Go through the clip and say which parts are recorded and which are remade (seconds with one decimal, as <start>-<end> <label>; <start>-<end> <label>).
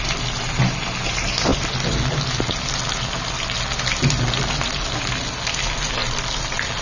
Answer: 0.0-6.8 recorded